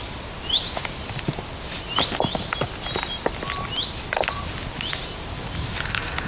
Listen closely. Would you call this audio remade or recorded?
recorded